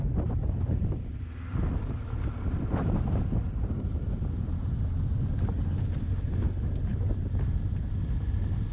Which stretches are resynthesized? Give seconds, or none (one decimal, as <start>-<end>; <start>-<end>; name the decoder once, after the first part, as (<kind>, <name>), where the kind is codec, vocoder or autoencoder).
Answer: none